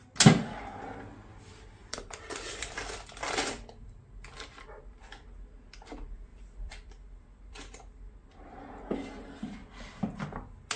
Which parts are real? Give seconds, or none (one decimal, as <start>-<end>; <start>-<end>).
0.0-1.8; 3.9-6.3; 8.0-9.6; 10.2-10.8